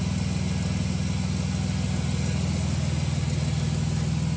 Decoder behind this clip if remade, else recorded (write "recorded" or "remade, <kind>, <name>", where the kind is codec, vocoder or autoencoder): recorded